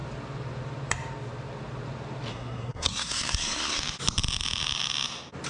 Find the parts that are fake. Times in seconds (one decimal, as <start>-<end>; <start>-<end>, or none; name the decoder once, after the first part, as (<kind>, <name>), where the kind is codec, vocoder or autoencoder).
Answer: 2.3-3.8 (codec, SNAC)